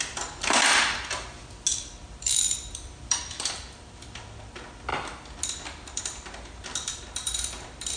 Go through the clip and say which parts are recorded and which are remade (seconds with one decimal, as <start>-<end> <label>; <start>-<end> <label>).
0.0-1.7 recorded; 1.7-4.2 remade; 4.2-8.0 recorded